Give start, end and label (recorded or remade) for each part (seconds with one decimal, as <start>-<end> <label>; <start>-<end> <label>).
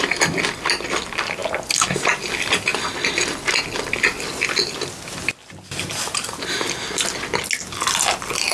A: 0.0-8.5 recorded